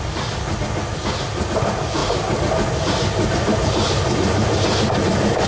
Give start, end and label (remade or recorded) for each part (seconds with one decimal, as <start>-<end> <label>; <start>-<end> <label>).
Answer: 0.0-5.5 recorded